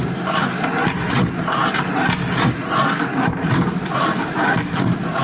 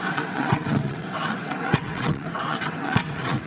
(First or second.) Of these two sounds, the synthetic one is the second